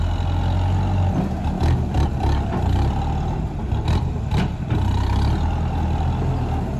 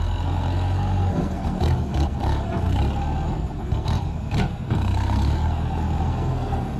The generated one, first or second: second